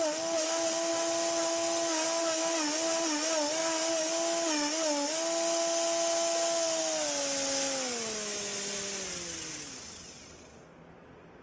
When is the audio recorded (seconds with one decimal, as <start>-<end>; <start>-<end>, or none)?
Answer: 0.0-11.4